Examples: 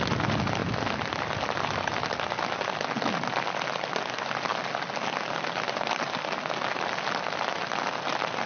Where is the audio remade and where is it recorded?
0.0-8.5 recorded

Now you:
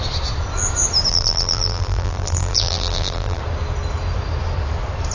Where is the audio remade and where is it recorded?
0.0-1.1 recorded; 1.1-3.4 remade; 3.4-5.1 recorded